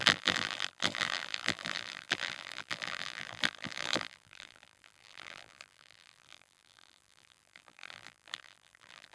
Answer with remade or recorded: remade